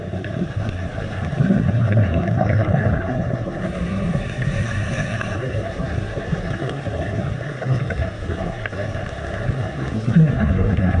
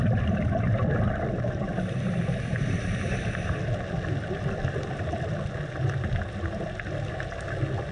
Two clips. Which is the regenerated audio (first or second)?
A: first